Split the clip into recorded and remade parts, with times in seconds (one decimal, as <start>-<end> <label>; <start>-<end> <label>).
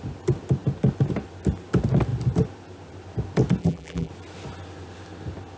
0.0-3.6 recorded; 3.6-4.1 remade; 4.1-5.6 recorded